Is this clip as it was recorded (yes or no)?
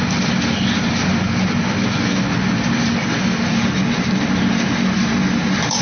yes